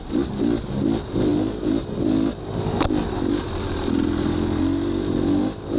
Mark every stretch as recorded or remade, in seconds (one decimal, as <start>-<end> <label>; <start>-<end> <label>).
0.0-5.8 recorded